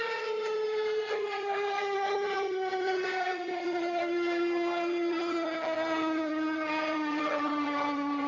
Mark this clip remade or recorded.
remade